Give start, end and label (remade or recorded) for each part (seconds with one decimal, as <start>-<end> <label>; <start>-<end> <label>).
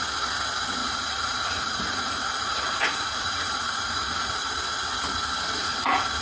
0.0-0.8 recorded; 0.8-4.5 remade; 4.5-5.6 recorded; 5.6-6.2 remade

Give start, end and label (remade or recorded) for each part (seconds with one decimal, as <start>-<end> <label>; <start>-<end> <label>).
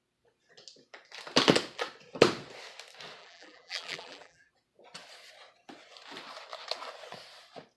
0.0-3.2 recorded; 3.2-4.5 remade; 4.5-7.8 recorded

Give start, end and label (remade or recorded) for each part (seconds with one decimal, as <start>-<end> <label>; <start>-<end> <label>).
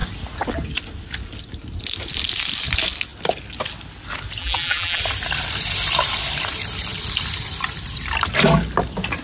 0.0-4.4 recorded; 4.4-5.0 remade; 5.0-9.2 recorded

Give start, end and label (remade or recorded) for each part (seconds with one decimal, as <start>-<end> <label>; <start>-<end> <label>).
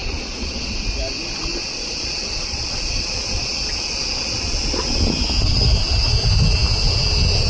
0.0-0.7 remade; 0.7-1.5 recorded; 1.5-5.0 remade; 5.0-7.5 recorded